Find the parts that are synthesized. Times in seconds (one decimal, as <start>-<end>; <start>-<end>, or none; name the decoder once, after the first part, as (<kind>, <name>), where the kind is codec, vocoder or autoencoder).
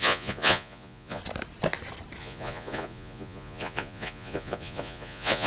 0.0-1.2 (vocoder, Vocos); 2.2-5.5